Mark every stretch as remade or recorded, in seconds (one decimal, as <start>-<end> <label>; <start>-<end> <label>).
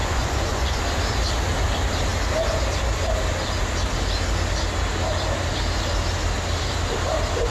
0.0-0.8 remade; 0.8-7.5 recorded